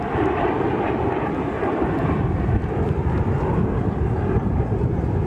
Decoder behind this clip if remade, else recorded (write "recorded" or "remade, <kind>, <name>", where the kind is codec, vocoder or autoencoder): remade, vocoder, BigVGAN v2